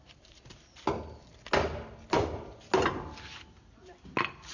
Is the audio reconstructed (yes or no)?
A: no